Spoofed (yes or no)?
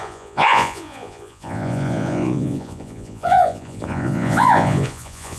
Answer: yes